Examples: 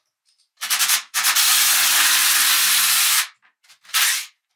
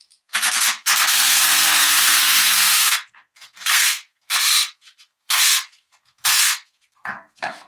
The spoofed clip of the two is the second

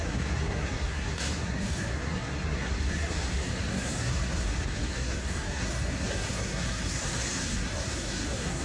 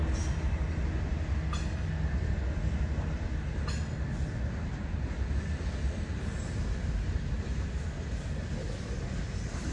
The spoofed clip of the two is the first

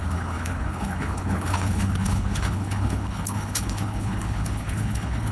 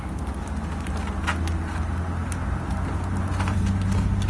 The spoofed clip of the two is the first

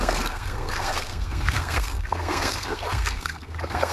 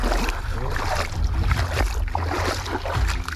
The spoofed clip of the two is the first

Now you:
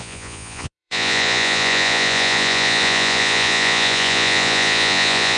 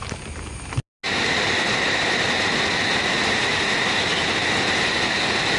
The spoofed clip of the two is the first